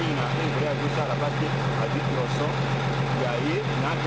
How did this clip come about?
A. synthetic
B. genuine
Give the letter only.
B